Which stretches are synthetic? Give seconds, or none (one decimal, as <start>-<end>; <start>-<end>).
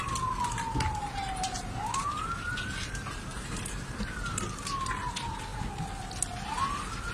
1.0-3.5